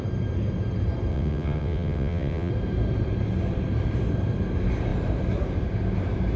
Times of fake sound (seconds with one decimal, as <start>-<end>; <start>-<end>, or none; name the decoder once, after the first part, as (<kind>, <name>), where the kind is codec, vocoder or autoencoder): 1.1-2.5 (vocoder, WaveNeXt)

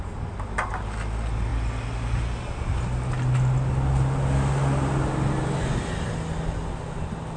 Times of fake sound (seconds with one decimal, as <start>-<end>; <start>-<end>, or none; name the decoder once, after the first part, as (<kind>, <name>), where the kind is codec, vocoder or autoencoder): none